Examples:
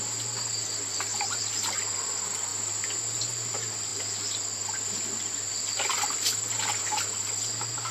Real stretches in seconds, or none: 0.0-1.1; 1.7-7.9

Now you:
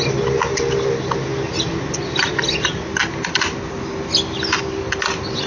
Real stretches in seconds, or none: 0.0-5.5

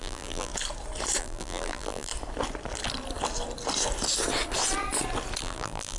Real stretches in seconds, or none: 0.5-1.2; 2.1-5.4

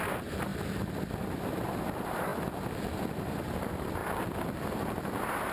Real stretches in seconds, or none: 2.3-3.1; 4.0-4.7

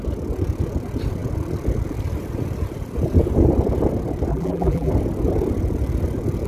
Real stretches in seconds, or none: 0.0-4.3; 4.9-6.5

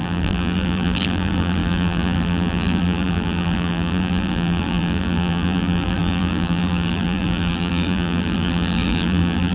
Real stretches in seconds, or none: none

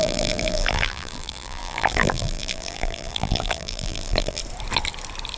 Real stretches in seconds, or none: 4.4-5.4

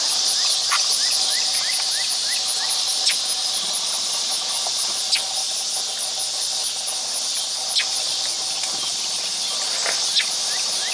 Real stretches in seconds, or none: 0.0-3.4; 4.1-8.9; 9.5-10.9